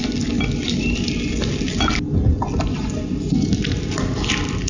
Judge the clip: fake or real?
real